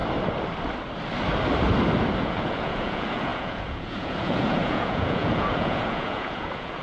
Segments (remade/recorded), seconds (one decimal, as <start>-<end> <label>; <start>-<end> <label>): 0.0-2.2 recorded; 2.2-6.8 remade

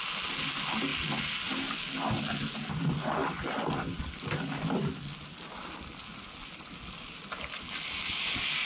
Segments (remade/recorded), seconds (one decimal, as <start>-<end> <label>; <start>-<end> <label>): 0.0-8.6 recorded

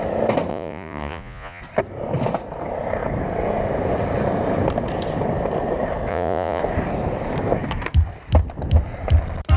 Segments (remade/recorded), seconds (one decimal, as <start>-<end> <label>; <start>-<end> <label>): 0.0-0.5 recorded; 0.5-1.6 remade; 1.6-6.1 recorded; 6.1-6.6 remade; 6.6-9.6 recorded

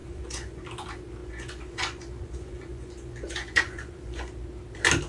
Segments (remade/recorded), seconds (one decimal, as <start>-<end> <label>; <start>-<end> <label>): 0.0-0.6 remade; 0.6-1.2 recorded; 1.2-4.3 remade; 4.3-5.1 recorded

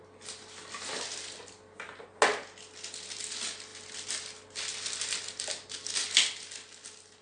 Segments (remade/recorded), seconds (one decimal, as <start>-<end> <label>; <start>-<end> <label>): 0.0-7.2 recorded

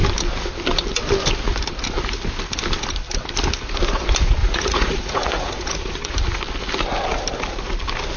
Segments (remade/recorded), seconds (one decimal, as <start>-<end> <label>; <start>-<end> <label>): 0.0-4.4 recorded; 4.4-6.1 remade; 6.1-8.2 recorded

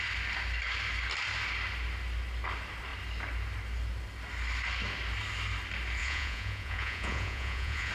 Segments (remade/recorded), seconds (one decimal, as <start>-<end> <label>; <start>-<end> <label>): 0.0-6.0 recorded; 6.0-7.9 remade

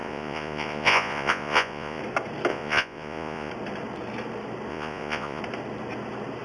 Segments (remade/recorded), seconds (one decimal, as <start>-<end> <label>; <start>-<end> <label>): 0.0-2.0 remade; 2.0-2.5 recorded; 2.5-3.5 remade; 3.5-4.7 recorded; 4.7-5.4 remade; 5.4-6.4 recorded